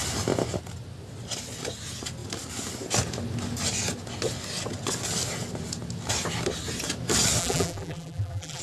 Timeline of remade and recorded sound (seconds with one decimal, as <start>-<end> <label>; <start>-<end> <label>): 0.0-7.4 recorded; 7.4-8.6 remade